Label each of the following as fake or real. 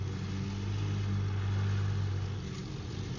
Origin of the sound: real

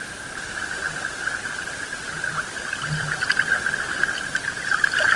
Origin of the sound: real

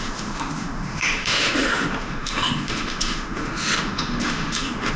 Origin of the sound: fake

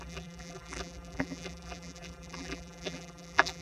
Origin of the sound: fake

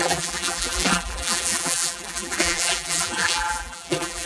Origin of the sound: fake